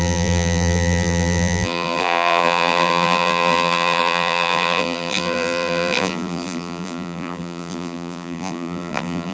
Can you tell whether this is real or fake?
fake